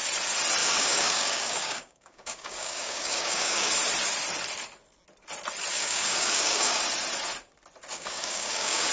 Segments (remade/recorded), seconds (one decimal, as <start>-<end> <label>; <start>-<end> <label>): 0.0-0.6 recorded; 0.6-3.7 remade; 3.7-5.7 recorded; 5.7-6.8 remade; 6.8-7.9 recorded; 7.9-8.9 remade